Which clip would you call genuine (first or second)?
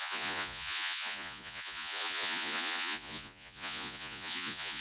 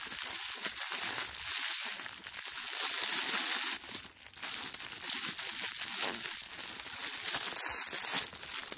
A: second